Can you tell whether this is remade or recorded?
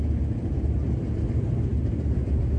remade